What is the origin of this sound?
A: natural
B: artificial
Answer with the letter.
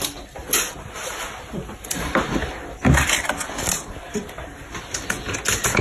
A